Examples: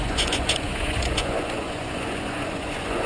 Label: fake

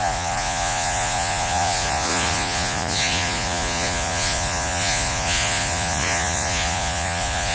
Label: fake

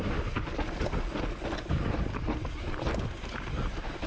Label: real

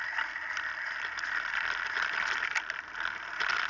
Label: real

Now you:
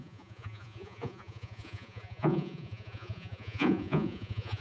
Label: fake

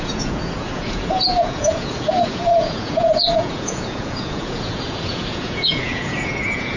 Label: fake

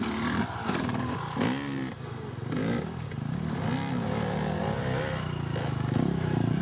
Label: real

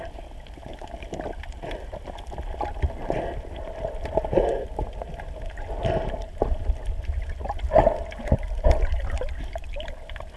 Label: real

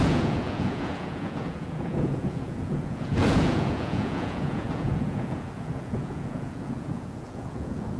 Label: fake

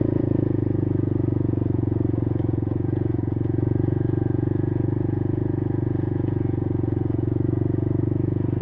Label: fake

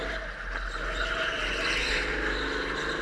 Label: real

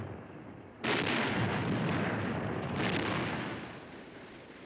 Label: real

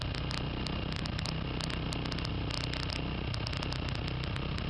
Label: real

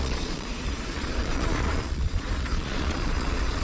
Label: fake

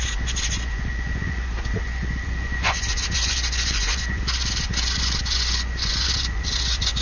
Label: fake